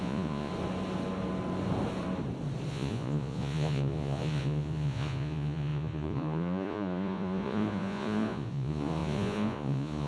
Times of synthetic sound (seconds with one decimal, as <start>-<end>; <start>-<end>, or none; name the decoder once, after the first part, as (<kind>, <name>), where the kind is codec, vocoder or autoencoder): 0.0-0.5 (vocoder, Vocos); 2.7-10.1